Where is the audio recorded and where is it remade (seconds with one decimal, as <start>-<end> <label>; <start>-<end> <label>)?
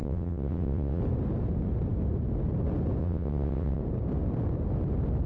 0.0-1.0 remade; 1.0-3.0 recorded; 3.0-3.8 remade; 3.8-5.3 recorded